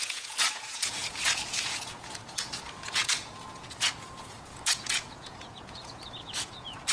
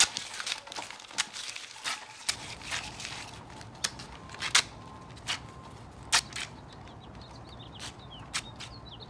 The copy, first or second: first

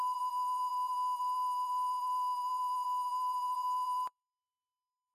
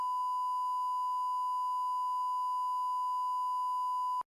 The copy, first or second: first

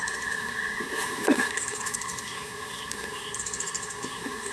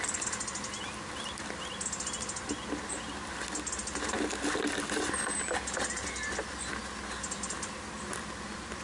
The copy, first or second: first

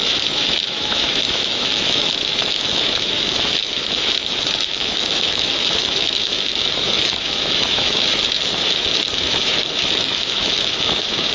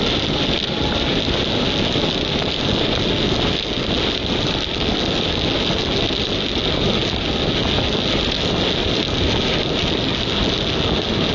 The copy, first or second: first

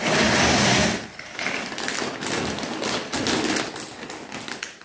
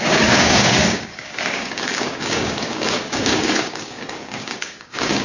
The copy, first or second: second